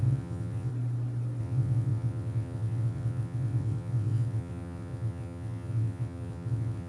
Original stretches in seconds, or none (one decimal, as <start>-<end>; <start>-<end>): 0.7-1.4